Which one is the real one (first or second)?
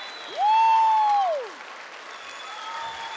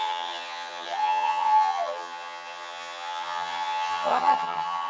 first